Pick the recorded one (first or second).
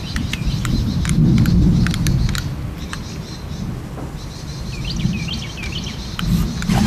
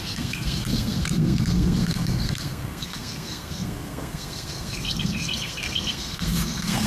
first